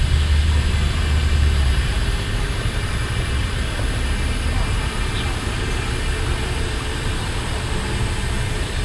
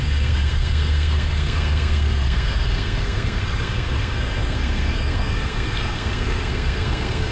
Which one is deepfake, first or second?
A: second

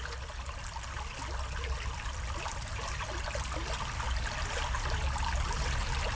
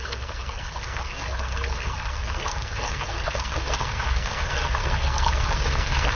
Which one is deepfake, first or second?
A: second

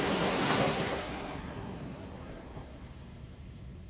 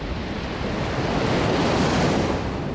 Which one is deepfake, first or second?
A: first